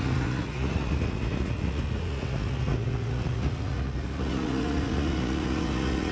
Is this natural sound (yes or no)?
no